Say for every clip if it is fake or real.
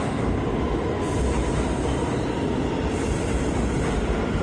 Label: real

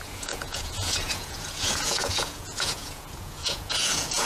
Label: fake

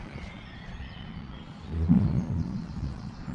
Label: fake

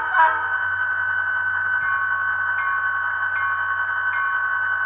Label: real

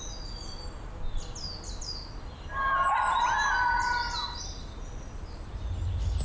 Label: real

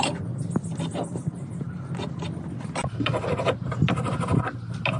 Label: real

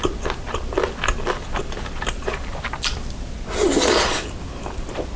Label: real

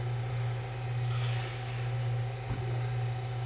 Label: real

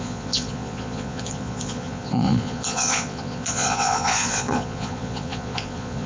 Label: fake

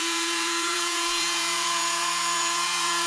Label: fake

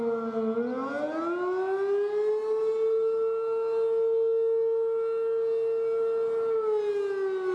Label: real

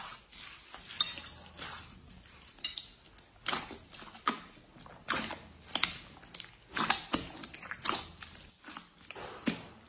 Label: real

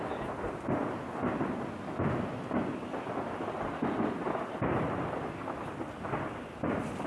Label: real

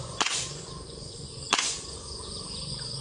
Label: fake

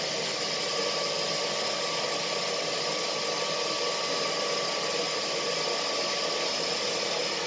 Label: real